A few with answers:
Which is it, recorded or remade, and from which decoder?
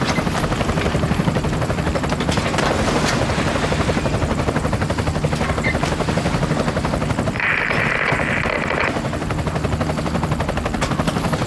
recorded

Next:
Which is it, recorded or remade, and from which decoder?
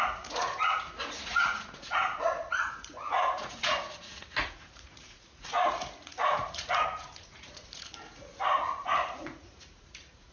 remade, vocoder, Vocos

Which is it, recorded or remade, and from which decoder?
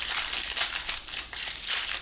recorded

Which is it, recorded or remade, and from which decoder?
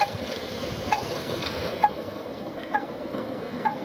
remade, codec, SNAC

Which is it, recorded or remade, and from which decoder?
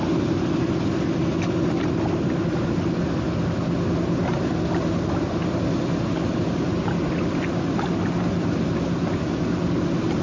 recorded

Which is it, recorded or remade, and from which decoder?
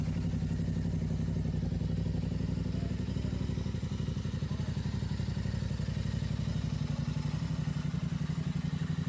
recorded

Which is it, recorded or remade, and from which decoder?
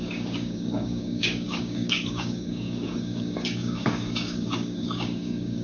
remade, codec, DAC